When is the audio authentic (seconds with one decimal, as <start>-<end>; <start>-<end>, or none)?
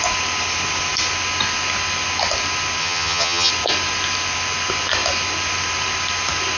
0.0-2.8; 3.5-6.6